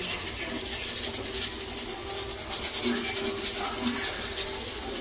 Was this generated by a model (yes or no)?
no